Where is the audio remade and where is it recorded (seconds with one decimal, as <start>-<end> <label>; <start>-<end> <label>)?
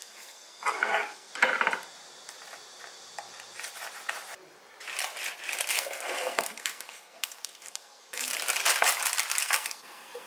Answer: 0.0-1.3 remade; 1.3-5.7 recorded; 5.7-8.3 remade; 8.3-9.4 recorded; 9.4-10.3 remade